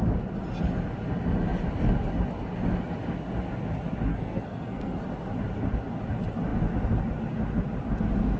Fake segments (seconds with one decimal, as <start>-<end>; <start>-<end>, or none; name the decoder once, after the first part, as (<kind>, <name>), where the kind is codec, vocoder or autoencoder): 4.1-5.0 (codec, SNAC)